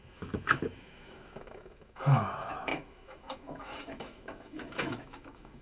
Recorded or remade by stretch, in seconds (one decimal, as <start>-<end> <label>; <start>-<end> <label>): 0.0-5.6 remade

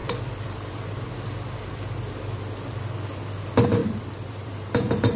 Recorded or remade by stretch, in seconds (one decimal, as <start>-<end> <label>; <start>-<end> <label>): 0.0-2.1 remade; 2.1-3.8 recorded; 3.8-4.5 remade; 4.5-5.2 recorded

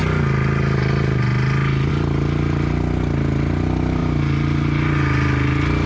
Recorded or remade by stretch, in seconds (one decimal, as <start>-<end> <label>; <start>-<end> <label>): 0.0-5.9 recorded

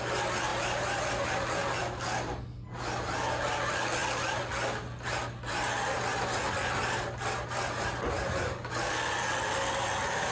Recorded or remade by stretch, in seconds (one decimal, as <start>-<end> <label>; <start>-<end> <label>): 0.0-10.3 recorded

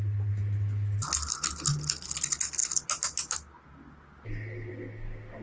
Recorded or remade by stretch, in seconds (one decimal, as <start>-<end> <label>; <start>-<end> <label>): 0.0-5.4 recorded

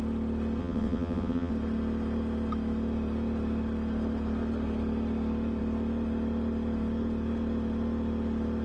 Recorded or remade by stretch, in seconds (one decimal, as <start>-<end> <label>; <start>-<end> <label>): 0.0-0.6 recorded; 0.6-1.5 remade; 1.5-8.6 recorded

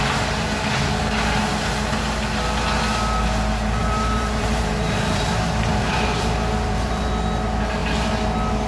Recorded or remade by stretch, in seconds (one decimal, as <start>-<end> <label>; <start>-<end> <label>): 0.0-3.8 recorded; 3.8-7.1 remade; 7.1-8.7 recorded

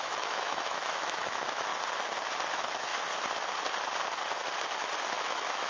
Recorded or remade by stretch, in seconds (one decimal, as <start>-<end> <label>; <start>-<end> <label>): 0.0-1.7 remade; 1.7-2.5 recorded; 2.5-2.9 remade; 2.9-5.1 recorded; 5.1-5.7 remade